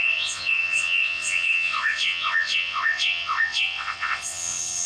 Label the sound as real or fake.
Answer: fake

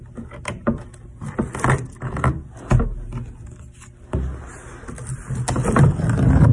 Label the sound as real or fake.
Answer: real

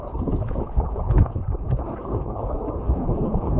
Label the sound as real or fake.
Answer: fake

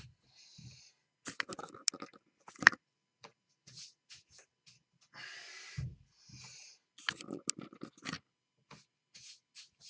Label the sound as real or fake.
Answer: real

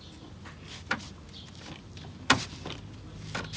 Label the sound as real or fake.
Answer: real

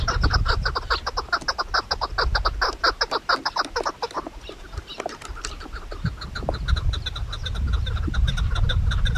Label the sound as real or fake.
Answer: real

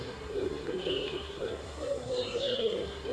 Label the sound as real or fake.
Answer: fake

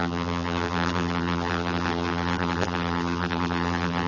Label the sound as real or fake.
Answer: fake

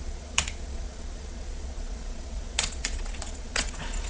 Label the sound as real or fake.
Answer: fake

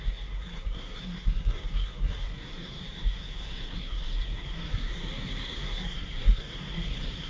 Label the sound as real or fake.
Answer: fake